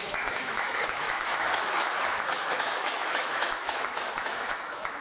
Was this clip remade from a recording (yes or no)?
yes